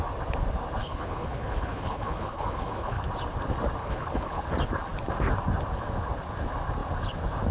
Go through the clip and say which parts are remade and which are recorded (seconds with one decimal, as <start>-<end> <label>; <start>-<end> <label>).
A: 0.0-0.8 recorded; 0.8-3.0 remade; 3.0-3.8 recorded; 3.8-4.4 remade; 4.4-7.5 recorded